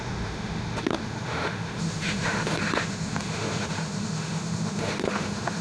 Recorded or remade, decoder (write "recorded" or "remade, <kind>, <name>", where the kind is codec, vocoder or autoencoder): remade, autoencoder, DAC-VAE